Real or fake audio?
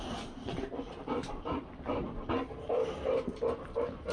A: real